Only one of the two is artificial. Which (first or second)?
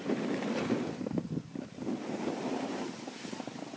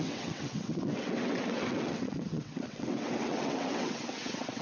second